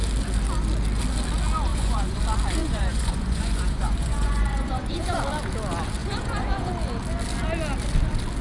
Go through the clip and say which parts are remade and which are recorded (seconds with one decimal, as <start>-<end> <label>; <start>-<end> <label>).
0.0-1.7 recorded; 1.7-2.2 remade; 2.2-2.6 recorded; 2.6-5.2 remade; 5.2-6.0 recorded; 6.0-6.7 remade; 6.7-8.4 recorded